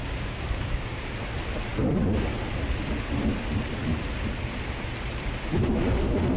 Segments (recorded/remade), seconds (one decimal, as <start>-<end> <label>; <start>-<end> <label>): 0.0-1.1 remade; 1.1-6.4 recorded